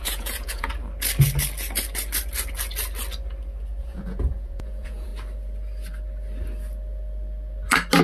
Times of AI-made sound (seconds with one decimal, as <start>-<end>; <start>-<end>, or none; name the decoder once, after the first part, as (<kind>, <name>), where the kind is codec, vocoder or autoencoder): 0.0-0.7 (vocoder, Vocos); 3.8-5.1